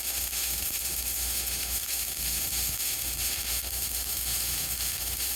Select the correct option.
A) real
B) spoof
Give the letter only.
B